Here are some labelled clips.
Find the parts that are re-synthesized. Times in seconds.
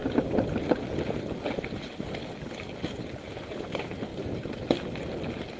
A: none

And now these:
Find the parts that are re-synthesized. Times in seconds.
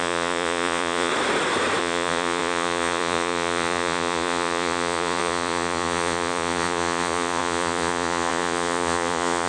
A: 0.0-1.1 (vocoder, Vocos); 1.8-9.5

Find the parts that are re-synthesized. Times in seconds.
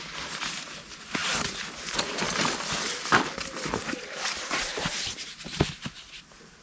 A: none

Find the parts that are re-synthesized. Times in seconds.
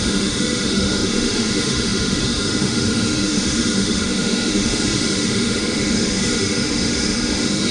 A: 0.0-7.7 (autoencoder, DAC-VAE)